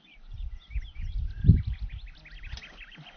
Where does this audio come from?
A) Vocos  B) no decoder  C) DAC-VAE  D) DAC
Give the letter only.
B